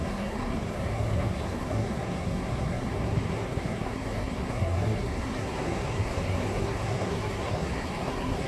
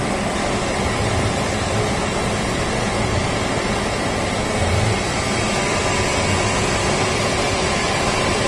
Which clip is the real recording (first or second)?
second